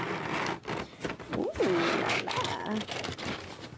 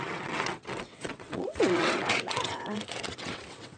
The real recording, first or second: first